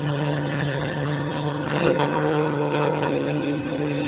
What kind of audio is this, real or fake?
fake